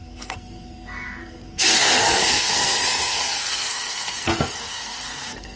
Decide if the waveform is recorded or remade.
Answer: remade